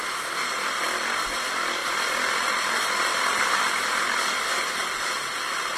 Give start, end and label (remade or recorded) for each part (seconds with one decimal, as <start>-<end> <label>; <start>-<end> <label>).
0.0-3.1 recorded; 3.1-5.8 remade